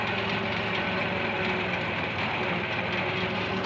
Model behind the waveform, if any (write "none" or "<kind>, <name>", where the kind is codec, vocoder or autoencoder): none